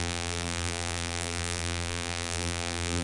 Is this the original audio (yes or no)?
no